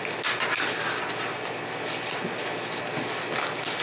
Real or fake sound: real